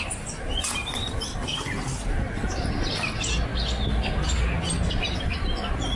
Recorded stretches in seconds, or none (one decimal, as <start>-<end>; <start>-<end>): 0.0-0.8; 2.0-6.0